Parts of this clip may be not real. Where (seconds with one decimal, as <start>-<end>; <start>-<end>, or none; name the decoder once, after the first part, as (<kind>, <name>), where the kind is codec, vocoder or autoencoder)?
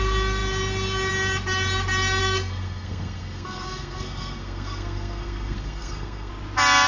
2.2-6.3 (codec, SNAC)